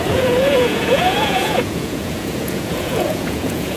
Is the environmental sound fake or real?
fake